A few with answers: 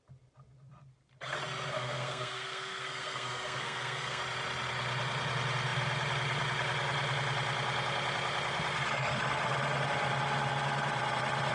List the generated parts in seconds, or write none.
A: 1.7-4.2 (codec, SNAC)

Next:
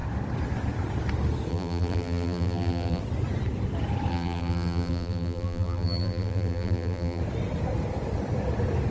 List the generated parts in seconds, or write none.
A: 1.5-3.0 (vocoder, BigVGAN v2); 4.1-7.2

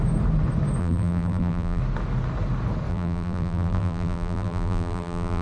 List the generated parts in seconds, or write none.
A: 0.8-1.8 (vocoder, BigVGAN v2); 2.9-5.4

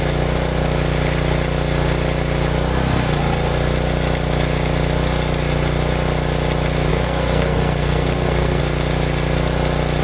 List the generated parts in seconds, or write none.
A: 6.9-8.6 (codec, SNAC)

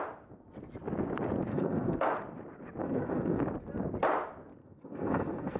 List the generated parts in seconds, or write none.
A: 1.5-2.1 (codec, SNAC); 2.8-3.4; 4.6-5.6

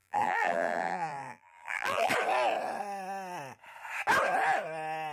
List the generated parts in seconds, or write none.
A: 0.0-2.1 (vocoder, BigVGAN v2)